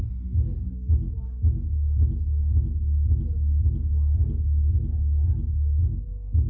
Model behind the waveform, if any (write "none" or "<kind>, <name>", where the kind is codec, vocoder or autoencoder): none